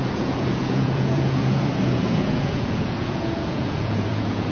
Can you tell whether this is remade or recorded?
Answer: remade